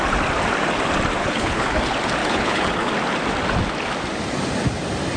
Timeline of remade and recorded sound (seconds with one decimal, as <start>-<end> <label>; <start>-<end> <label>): 0.0-1.2 recorded; 1.2-1.8 remade; 1.8-2.2 recorded; 2.2-2.9 remade; 2.9-5.2 recorded